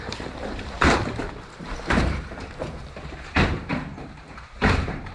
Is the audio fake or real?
fake